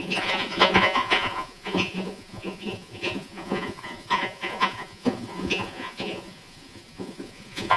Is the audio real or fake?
fake